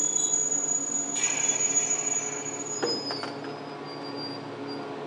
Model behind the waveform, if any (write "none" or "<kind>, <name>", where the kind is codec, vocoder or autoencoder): none